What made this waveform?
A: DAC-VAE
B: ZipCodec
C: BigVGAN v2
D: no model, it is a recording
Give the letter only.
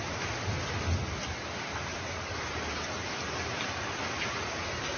D